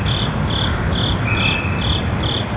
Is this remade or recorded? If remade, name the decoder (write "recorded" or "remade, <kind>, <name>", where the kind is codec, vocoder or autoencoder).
recorded